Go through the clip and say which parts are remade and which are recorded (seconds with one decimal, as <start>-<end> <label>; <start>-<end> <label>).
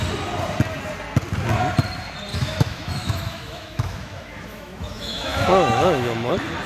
0.0-2.3 recorded; 2.3-6.3 remade; 6.3-6.7 recorded